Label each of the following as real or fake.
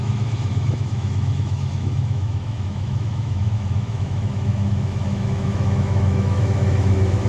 fake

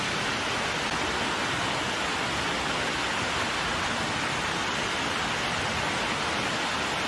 real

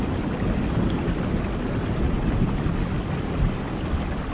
real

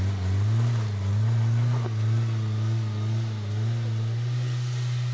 real